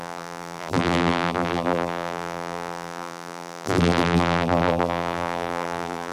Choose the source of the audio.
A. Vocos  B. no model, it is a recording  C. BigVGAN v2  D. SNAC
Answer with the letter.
C